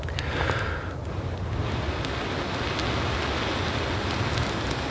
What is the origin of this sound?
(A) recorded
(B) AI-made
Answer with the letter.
A